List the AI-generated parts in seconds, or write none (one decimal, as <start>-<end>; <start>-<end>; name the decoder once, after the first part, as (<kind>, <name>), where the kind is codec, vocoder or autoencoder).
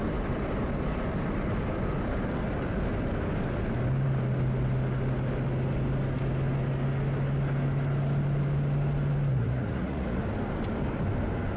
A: 9.3-10.2 (vocoder, Vocos)